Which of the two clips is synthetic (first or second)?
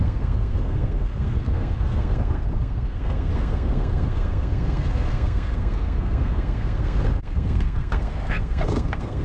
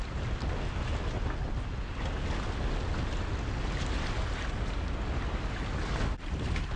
first